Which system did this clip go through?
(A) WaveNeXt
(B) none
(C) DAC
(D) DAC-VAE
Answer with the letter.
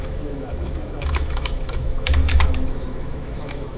D